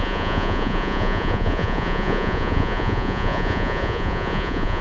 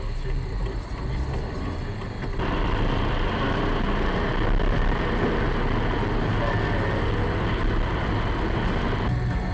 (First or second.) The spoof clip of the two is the first